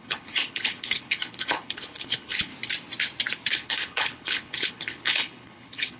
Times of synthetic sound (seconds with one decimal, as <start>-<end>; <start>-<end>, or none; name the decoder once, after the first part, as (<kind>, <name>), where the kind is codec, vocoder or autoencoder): 0.0-2.5 (codec, HILCodec); 3.5-6.0